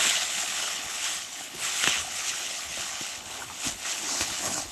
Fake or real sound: fake